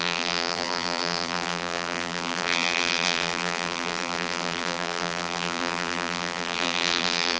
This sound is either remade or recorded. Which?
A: remade